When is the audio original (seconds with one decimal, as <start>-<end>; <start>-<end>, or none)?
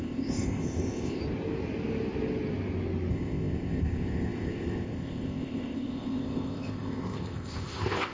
1.2-3.1